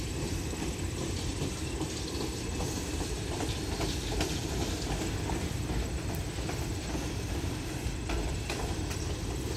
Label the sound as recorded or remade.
remade